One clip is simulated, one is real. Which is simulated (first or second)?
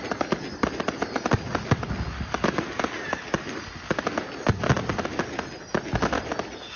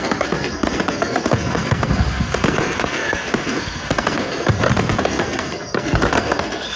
second